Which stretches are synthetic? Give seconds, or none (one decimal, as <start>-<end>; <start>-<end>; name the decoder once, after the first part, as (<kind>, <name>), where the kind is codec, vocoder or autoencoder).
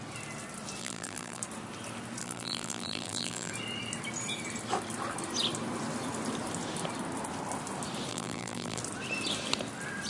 0.8-1.4 (vocoder, BigVGAN v2); 2.2-3.5; 8.1-8.8